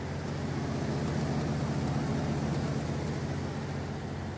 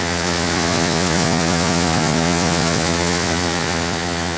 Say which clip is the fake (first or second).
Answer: second